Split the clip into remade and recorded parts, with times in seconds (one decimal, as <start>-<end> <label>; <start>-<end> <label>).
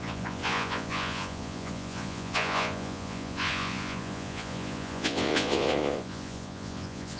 0.0-7.2 remade